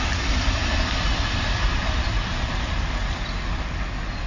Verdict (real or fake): real